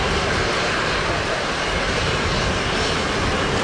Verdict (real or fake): real